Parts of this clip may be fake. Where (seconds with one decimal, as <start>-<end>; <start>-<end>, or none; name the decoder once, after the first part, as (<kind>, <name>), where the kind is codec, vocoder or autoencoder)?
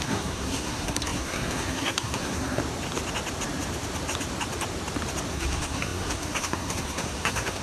0.0-2.6 (codec, SNAC); 5.3-7.6